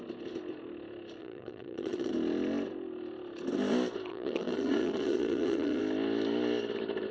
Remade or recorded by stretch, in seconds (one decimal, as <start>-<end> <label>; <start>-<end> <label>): 0.0-1.2 recorded; 1.2-2.1 remade; 2.1-4.1 recorded; 4.1-5.8 remade; 5.8-7.1 recorded